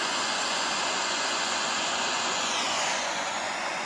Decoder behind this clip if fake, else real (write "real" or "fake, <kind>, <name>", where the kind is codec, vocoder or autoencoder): fake, vocoder, Vocos